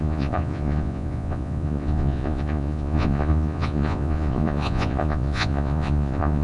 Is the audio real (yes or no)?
no